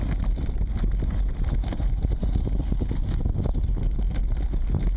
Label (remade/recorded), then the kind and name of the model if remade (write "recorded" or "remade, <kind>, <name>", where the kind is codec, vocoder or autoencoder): recorded